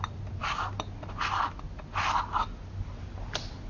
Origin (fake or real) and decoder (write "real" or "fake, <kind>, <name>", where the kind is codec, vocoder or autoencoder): real